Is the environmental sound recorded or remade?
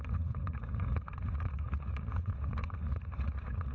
remade